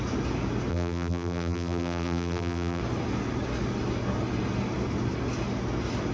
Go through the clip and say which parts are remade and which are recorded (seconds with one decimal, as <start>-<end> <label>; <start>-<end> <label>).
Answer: 0.0-0.7 recorded; 0.7-2.8 remade; 2.8-6.1 recorded